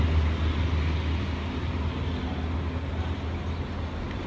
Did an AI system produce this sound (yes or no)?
no